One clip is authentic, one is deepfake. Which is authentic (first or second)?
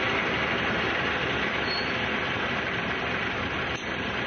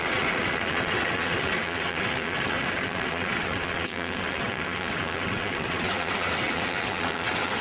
first